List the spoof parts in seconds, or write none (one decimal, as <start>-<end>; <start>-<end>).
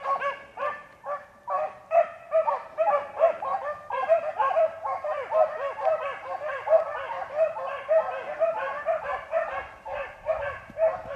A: 3.5-7.9